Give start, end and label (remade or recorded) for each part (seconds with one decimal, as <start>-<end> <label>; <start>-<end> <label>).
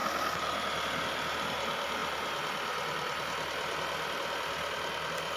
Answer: 0.0-5.4 recorded